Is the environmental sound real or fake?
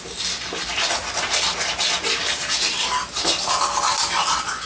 real